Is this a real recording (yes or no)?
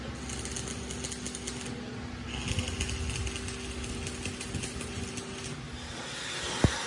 yes